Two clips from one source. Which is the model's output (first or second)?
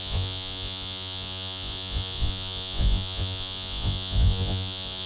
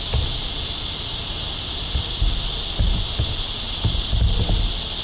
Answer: first